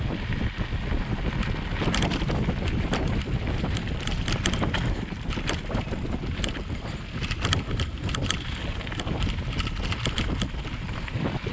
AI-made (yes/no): no